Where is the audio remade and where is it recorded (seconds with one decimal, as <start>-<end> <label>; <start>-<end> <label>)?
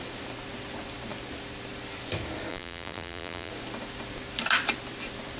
0.0-2.5 recorded; 2.5-3.5 remade; 3.5-5.4 recorded